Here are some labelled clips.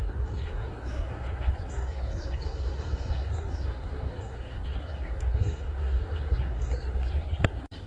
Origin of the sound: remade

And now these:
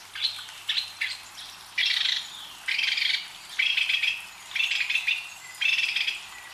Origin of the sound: recorded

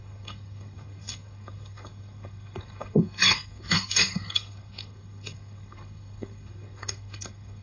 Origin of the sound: remade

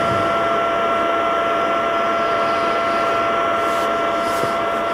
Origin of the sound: recorded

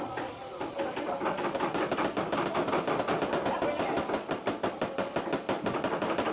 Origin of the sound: recorded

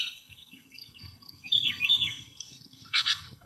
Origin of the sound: remade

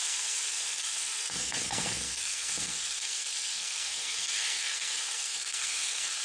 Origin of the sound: remade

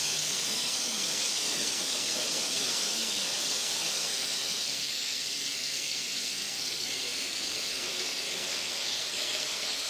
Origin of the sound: remade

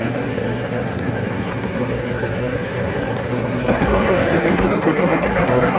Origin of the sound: remade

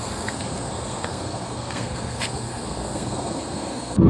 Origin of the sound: remade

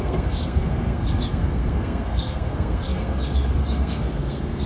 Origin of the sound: remade